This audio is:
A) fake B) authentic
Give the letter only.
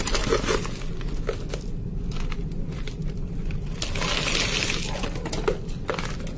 B